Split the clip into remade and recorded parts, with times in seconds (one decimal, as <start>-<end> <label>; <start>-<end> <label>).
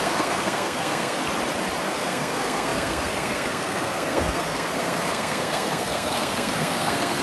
0.0-1.2 remade; 1.2-1.8 recorded; 1.8-7.2 remade